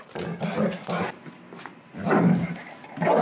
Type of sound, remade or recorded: recorded